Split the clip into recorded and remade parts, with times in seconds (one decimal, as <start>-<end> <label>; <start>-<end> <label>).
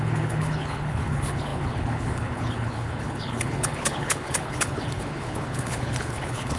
0.0-6.6 remade